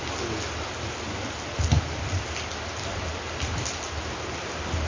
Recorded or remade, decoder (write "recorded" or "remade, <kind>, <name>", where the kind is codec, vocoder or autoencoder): recorded